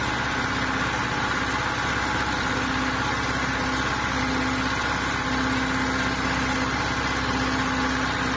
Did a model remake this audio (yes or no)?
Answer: no